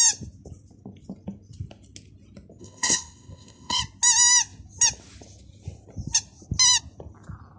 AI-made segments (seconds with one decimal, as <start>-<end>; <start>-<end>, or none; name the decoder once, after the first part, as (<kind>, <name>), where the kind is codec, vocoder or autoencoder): 2.6-3.8 (codec, ZipCodec)